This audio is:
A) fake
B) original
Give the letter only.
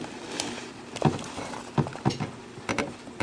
B